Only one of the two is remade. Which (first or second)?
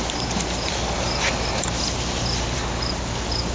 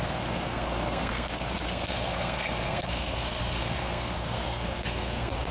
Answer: second